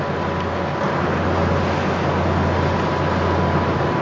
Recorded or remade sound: recorded